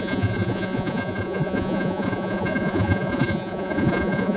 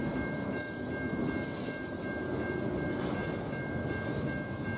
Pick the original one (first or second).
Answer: second